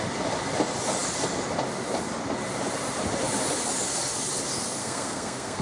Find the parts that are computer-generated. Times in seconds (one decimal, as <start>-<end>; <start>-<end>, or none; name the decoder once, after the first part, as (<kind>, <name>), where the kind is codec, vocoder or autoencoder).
4.8-5.6 (codec, SNAC)